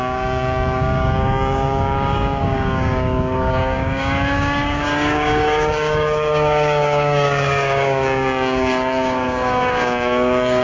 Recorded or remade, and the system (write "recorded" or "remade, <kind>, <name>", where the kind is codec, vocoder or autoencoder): remade, codec, DAC